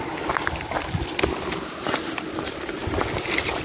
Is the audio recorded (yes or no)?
yes